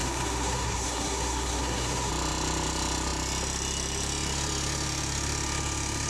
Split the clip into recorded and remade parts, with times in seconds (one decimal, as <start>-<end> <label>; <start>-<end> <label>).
0.0-2.1 remade; 2.1-6.1 recorded